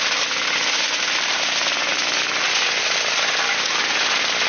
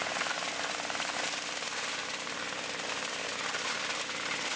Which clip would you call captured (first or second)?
first